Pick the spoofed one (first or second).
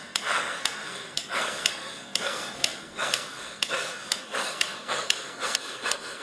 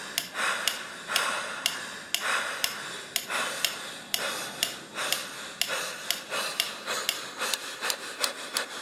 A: first